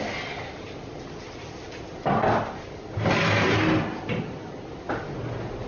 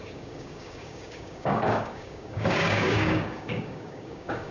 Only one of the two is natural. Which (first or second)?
first